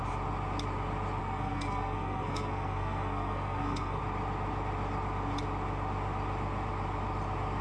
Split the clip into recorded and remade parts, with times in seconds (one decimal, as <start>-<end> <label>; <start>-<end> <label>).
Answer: 0.0-1.2 recorded; 1.2-4.0 remade; 4.0-7.6 recorded